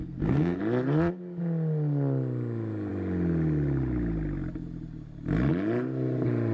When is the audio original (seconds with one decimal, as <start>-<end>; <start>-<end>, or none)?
0.6-6.5